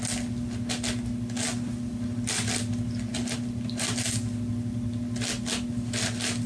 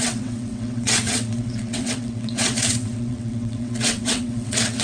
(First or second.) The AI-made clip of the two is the second